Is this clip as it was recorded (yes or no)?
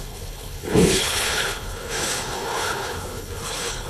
no